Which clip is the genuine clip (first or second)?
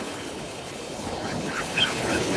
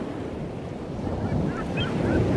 second